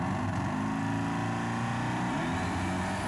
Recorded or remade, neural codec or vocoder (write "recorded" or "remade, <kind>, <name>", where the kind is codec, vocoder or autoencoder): recorded